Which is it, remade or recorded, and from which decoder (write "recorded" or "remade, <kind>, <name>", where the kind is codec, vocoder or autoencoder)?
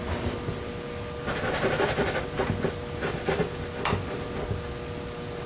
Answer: recorded